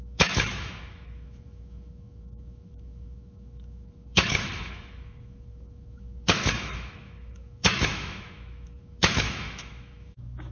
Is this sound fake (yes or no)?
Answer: yes